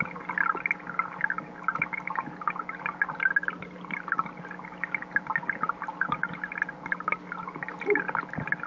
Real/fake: real